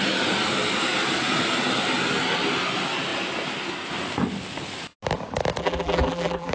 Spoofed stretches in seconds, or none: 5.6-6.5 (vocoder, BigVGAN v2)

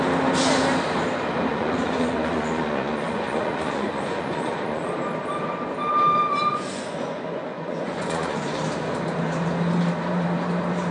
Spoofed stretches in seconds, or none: 1.5-4.9 (vocoder, Vocos); 6.5-8.6

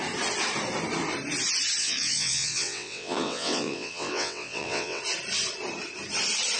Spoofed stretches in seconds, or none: 1.8-5.0 (vocoder, WaveNeXt)

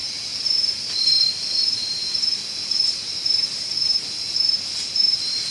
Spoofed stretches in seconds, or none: 0.0-5.5 (vocoder, BigVGAN v2)

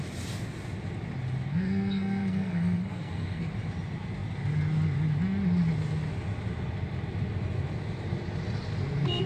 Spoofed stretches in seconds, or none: 1.5-3.5 (codec, SNAC)